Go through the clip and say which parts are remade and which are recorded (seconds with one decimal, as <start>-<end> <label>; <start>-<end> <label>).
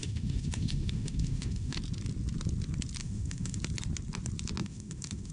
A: 0.0-1.8 remade; 1.8-3.0 recorded; 3.0-3.6 remade; 3.6-4.6 recorded; 4.6-5.3 remade